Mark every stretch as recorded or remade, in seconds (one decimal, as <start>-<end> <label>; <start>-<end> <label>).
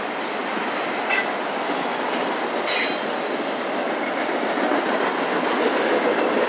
0.0-6.5 recorded